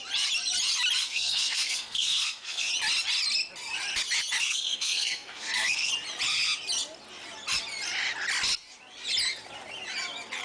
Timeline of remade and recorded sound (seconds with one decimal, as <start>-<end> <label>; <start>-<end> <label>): 0.0-1.0 recorded; 1.0-2.7 remade; 2.7-4.4 recorded; 4.4-5.9 remade; 5.9-10.4 recorded